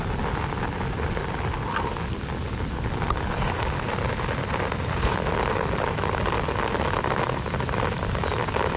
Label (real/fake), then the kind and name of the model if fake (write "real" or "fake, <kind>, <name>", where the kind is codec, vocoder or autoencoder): real